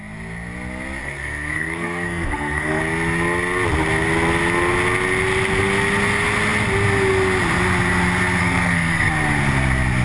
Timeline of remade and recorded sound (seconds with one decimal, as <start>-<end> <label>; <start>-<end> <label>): 0.0-1.0 recorded; 1.0-2.8 remade; 2.8-8.4 recorded; 8.4-9.1 remade; 9.1-10.0 recorded